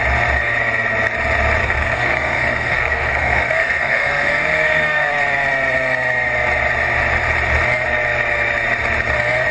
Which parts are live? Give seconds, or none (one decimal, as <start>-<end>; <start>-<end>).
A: 0.0-1.6; 5.1-9.5